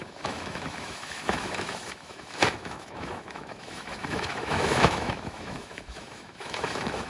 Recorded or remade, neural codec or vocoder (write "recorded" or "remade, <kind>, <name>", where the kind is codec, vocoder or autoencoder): remade, autoencoder, DAC-VAE